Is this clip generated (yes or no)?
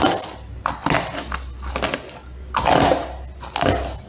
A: no